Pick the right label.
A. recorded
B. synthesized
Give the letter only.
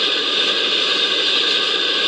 B